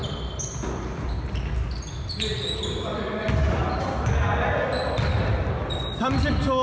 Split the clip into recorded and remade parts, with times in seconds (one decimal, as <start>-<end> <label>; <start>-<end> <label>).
0.0-6.6 recorded